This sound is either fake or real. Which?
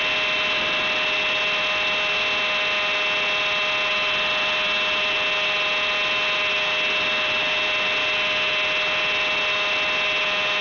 real